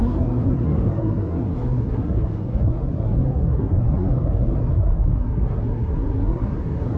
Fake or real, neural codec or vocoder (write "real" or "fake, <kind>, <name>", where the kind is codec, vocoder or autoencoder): fake, codec, SNAC